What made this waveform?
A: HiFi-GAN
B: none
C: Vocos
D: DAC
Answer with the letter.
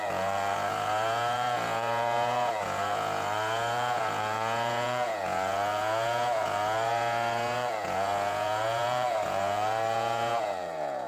C